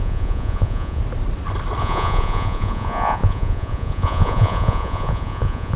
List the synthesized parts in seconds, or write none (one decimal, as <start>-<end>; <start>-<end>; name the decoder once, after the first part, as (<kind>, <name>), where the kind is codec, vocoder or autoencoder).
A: 0.0-1.0 (vocoder, Vocos); 1.8-5.8